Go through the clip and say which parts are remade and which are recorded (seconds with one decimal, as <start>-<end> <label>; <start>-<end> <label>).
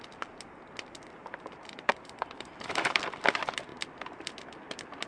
0.0-1.2 recorded; 1.2-3.0 remade; 3.0-5.1 recorded